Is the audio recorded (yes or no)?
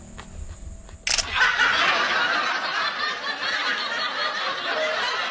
yes